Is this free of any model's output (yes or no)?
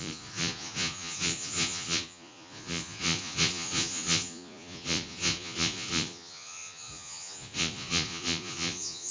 no